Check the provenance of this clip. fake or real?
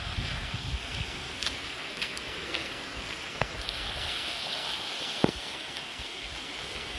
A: fake